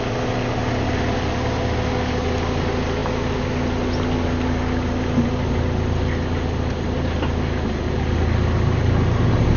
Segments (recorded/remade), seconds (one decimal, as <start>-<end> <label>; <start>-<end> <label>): 0.0-9.6 recorded